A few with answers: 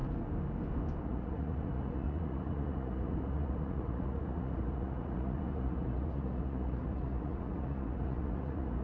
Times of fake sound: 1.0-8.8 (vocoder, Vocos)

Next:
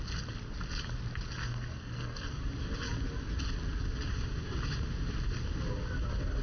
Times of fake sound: 1.4-2.4 (codec, SNAC)

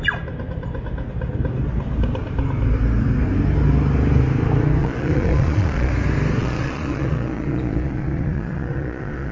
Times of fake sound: 4.8-5.9 (vocoder, Vocos); 6.4-9.3

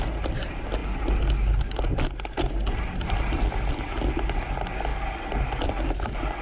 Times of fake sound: none

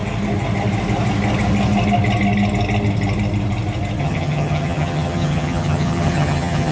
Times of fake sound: 4.0-6.7 (vocoder, HiFi-GAN)

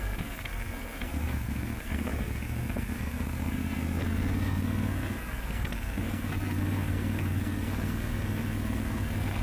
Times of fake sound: 0.0-9.4 (codec, SNAC)

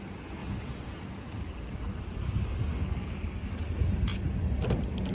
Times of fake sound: 2.7-3.5 (codec, SNAC)

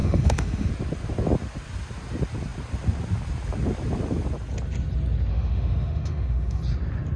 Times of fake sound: 0.0-0.7 (autoencoder, DAC-VAE); 5.3-6.6